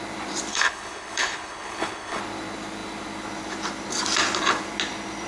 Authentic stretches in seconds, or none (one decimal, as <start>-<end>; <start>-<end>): 0.0-0.5; 2.2-5.3